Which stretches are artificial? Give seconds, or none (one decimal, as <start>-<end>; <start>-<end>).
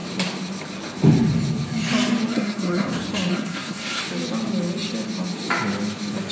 2.3-2.9; 3.3-4.0